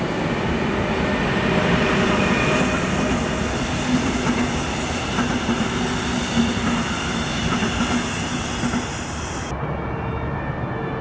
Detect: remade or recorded recorded